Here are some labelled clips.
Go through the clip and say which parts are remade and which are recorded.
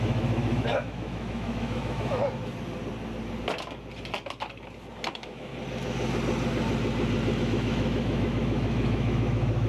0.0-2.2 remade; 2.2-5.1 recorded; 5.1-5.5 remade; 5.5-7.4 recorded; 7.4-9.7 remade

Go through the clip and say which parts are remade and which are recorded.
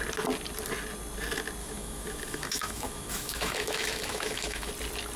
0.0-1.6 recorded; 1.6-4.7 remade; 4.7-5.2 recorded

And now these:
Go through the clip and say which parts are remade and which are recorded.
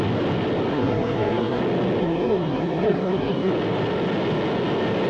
0.0-0.7 recorded; 0.7-1.6 remade; 1.6-2.0 recorded; 2.0-3.5 remade; 3.5-5.1 recorded